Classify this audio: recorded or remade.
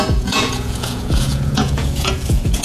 remade